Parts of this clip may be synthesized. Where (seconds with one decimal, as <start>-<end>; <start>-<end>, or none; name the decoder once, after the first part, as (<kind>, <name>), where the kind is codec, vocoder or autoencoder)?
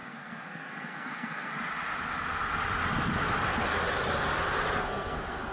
0.0-1.5 (codec, SNAC); 4.8-5.5